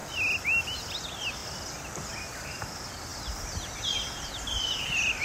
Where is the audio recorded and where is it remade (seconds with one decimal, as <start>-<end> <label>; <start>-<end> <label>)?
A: 0.0-5.2 recorded